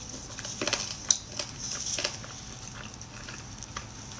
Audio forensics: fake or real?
real